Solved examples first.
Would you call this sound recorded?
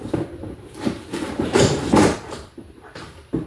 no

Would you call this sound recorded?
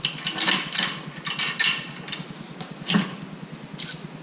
yes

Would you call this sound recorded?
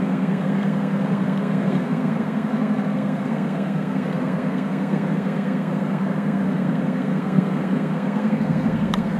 no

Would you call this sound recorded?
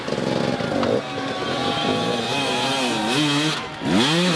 yes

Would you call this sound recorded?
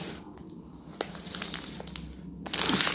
yes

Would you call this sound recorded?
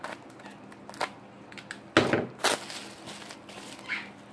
yes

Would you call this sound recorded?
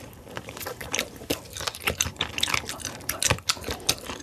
no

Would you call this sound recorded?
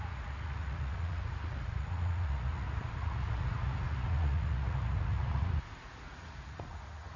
no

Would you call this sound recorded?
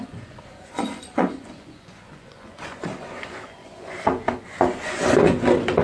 no